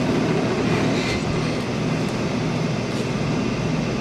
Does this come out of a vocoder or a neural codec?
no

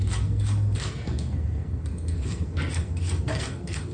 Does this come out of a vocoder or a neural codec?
yes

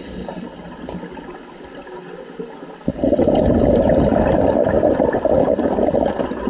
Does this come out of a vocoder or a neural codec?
no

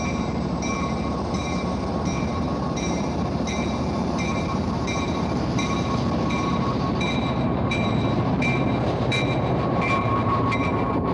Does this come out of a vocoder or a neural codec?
yes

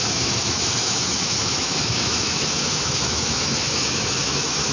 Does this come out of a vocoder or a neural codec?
yes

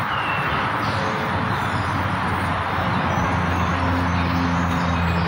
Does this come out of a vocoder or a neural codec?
no